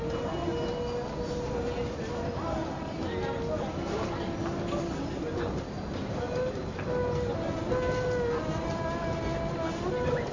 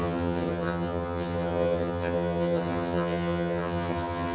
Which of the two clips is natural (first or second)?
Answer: first